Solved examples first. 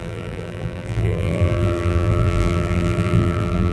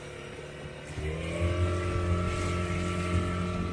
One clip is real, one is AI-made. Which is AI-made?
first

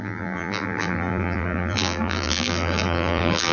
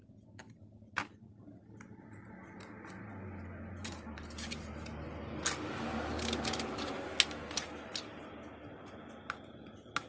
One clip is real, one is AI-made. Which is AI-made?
first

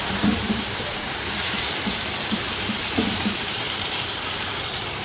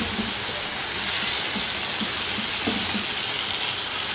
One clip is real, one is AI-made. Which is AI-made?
first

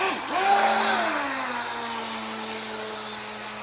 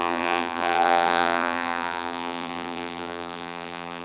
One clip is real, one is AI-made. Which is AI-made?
second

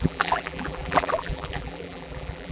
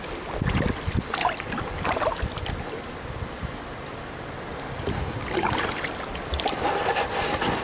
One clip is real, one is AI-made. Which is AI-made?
first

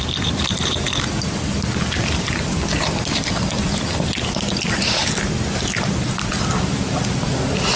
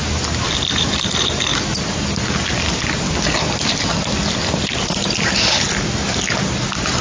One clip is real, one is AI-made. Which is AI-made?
first